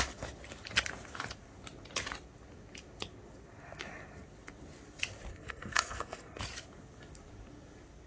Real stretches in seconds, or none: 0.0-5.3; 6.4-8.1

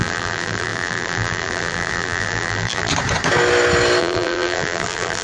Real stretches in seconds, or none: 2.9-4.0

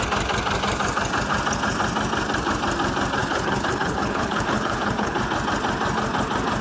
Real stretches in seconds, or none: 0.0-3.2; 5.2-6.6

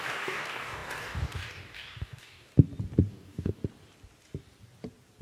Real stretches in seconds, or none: 2.5-3.1; 3.6-5.2

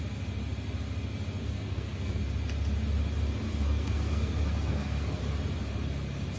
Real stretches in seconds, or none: 0.0-1.4; 2.2-3.5; 5.2-6.4